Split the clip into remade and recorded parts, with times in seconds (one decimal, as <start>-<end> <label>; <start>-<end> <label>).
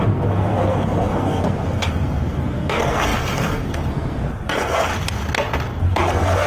0.0-4.9 remade; 4.9-5.8 recorded; 5.8-6.5 remade